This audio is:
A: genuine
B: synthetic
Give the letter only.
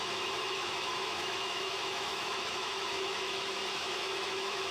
B